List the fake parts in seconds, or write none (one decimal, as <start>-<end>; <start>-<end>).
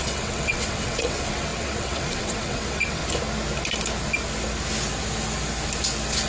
0.0-3.0